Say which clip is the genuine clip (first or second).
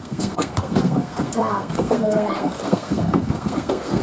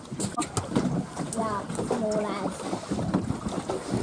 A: second